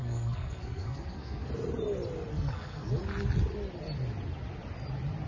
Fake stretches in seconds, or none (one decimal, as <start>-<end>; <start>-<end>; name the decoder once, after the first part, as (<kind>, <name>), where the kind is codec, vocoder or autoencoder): 0.0-1.5 (codec, SNAC); 2.3-3.0